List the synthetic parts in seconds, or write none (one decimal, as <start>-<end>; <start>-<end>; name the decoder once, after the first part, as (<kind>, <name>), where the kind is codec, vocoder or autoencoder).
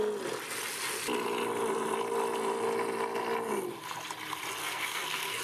4.6-5.4 (codec, SNAC)